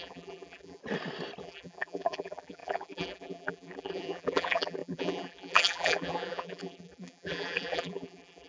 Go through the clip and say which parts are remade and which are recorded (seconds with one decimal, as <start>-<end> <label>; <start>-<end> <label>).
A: 0.0-0.8 remade; 0.8-1.4 recorded; 1.4-8.5 remade